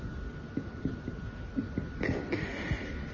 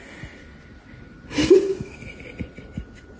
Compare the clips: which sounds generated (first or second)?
first